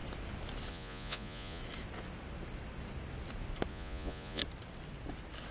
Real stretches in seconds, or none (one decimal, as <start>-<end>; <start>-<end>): 0.0-0.7; 1.6-3.7; 4.4-5.5